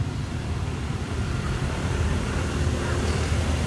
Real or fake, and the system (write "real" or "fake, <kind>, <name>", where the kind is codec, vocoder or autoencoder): fake, vocoder, BigVGAN v2